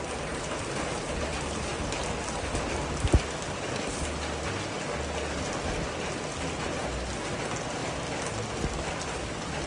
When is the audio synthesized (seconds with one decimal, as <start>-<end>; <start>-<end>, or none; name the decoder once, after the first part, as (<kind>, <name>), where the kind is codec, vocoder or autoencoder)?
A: none